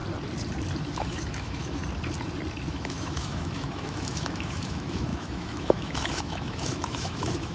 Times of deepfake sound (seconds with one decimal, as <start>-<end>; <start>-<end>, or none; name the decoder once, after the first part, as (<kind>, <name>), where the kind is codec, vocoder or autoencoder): 0.9-1.8 (autoencoder, DAC-VAE); 2.7-7.5